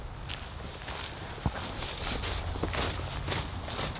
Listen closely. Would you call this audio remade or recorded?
recorded